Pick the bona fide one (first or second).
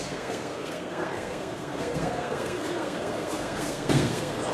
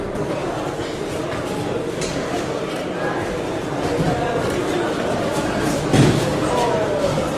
second